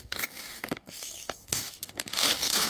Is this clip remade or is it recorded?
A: remade